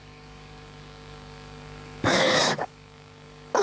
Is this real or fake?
fake